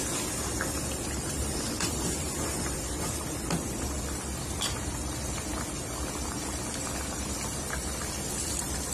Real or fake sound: fake